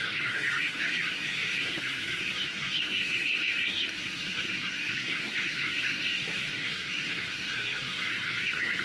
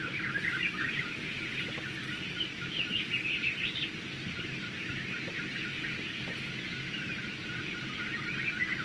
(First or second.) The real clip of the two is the second